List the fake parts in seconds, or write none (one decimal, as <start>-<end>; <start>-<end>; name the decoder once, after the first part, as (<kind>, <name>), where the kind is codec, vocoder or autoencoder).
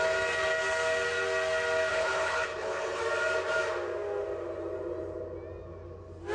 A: 1.9-3.0 (codec, HILCodec)